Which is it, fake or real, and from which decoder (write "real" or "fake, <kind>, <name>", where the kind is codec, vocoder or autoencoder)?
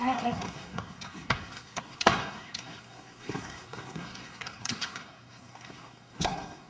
fake, codec, SNAC